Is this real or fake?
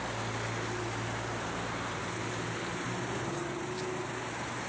real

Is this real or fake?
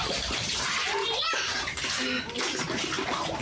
real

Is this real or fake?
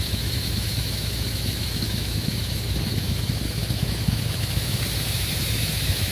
fake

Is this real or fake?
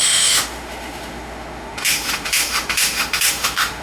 fake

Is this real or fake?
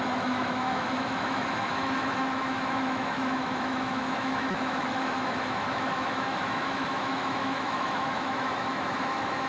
fake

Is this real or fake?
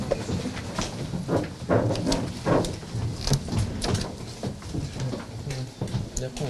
real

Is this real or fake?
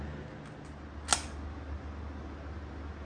real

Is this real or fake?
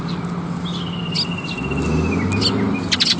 real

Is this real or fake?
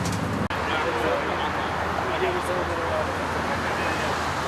real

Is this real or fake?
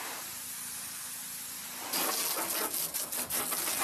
real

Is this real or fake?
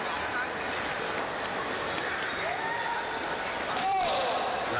real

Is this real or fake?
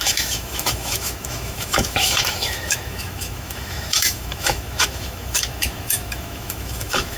fake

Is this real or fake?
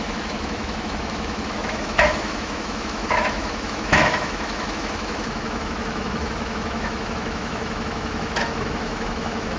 fake